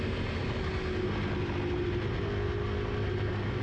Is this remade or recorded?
recorded